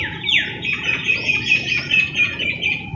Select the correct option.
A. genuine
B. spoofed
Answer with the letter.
B